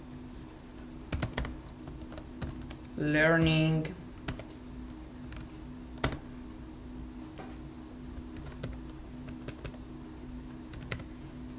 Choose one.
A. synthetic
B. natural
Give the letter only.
B